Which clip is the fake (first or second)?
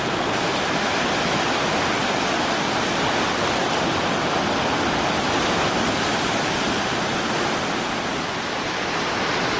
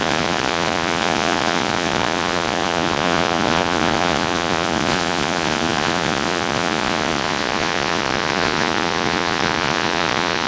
second